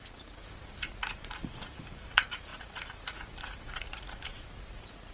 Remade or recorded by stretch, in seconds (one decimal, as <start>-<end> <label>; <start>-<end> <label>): 0.0-5.1 remade